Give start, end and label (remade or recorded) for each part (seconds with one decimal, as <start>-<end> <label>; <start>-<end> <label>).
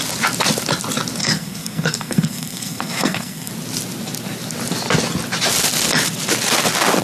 0.0-1.2 recorded; 1.2-3.5 remade; 3.5-7.0 recorded